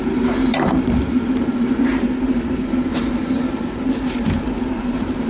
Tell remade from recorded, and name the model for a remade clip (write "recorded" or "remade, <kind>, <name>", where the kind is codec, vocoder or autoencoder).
remade, vocoder, BigVGAN v2